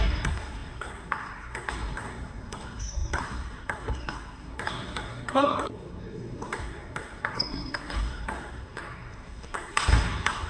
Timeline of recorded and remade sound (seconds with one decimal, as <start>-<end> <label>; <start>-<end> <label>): 0.0-10.5 remade